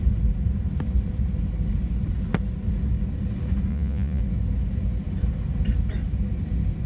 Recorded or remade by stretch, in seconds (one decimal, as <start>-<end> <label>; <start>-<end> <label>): 0.0-3.7 recorded; 3.7-4.2 remade; 4.2-6.9 recorded